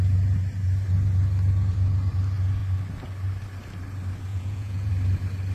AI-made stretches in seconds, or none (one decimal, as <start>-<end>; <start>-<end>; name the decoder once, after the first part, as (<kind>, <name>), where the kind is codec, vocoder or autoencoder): 4.3-4.9 (vocoder, Vocos)